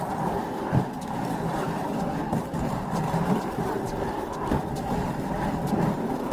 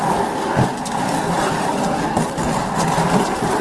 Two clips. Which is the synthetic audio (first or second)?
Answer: first